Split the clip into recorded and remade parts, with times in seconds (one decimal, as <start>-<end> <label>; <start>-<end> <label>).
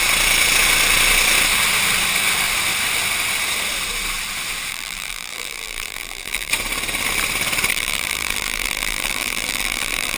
0.0-4.7 recorded; 4.7-6.5 remade; 6.5-7.7 recorded; 7.7-10.2 remade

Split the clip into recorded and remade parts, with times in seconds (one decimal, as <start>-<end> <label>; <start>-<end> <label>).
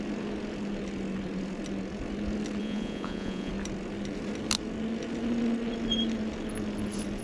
0.0-2.6 recorded; 2.6-3.5 remade; 3.5-7.2 recorded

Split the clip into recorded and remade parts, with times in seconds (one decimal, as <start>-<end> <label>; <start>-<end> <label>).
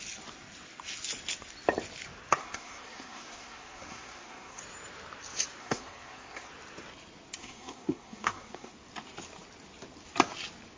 0.0-2.4 recorded; 2.4-4.6 remade; 4.6-5.6 recorded; 5.6-6.5 remade; 6.5-7.4 recorded; 7.4-8.7 remade; 8.7-10.8 recorded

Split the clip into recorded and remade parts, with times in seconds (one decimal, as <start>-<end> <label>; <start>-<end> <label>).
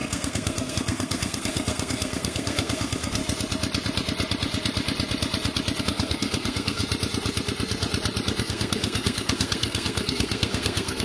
0.0-3.2 remade; 3.2-5.8 recorded; 5.8-6.8 remade; 6.8-8.4 recorded; 8.4-11.0 remade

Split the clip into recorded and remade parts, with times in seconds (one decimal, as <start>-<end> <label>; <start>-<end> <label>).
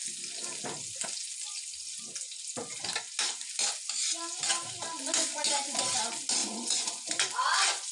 0.0-6.4 recorded; 6.4-7.3 remade; 7.3-7.9 recorded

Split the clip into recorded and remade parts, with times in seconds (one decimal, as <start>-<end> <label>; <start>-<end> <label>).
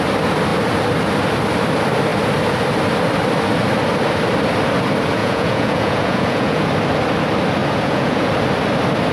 0.0-5.2 recorded; 5.2-6.7 remade; 6.7-7.6 recorded; 7.6-8.3 remade; 8.3-9.1 recorded